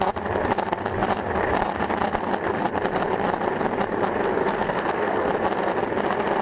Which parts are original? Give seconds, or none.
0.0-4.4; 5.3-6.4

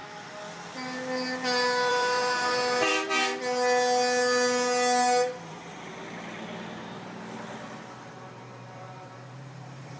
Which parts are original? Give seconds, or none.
0.0-1.9; 2.9-5.3; 5.9-8.0